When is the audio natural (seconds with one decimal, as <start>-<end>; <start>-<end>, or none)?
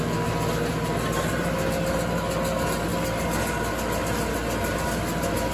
0.0-5.5